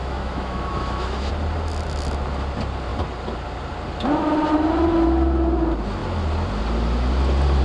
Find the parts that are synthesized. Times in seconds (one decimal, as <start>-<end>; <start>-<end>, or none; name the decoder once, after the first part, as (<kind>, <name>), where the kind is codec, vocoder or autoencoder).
0.0-1.3 (autoencoder, DAC-VAE)